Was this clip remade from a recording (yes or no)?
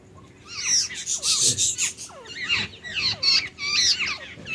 no